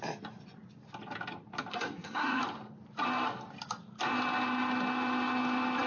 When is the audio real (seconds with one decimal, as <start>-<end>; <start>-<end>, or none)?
0.0-1.7; 2.4-5.9